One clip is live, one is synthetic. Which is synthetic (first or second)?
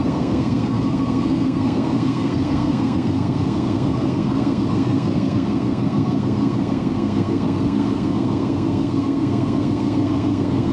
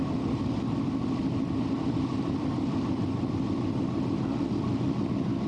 first